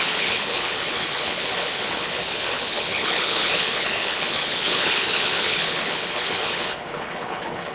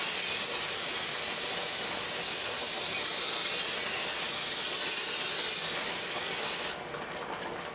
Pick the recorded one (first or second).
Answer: second